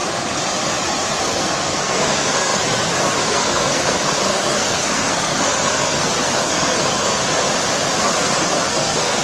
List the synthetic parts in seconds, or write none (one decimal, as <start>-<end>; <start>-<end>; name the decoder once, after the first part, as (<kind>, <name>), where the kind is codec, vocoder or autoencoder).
1.2-7.2 (codec, SNAC); 8.0-9.2

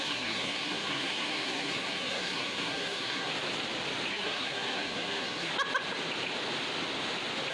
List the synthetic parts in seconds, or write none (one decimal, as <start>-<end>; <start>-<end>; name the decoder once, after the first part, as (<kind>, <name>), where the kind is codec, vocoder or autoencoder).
0.0-3.3 (codec, SNAC); 4.1-5.5

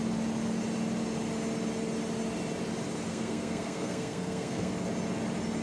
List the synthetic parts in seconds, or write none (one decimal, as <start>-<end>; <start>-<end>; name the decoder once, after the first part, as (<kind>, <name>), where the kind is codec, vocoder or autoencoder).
3.1-4.7 (codec, SNAC)